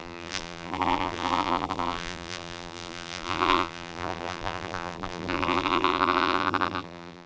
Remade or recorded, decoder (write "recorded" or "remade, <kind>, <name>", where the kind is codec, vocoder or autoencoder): remade, vocoder, BigVGAN v2